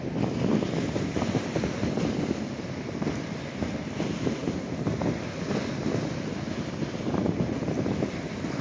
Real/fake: real